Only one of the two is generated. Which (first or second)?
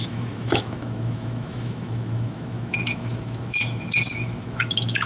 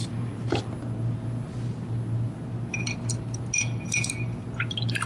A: first